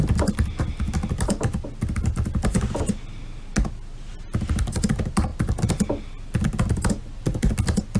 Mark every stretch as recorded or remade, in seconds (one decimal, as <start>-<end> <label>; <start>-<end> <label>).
0.0-8.0 recorded